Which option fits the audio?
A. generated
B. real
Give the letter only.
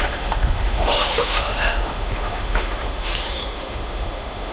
A